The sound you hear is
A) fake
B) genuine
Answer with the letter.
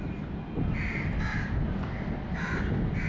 B